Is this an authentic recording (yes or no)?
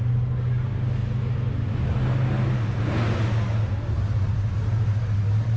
yes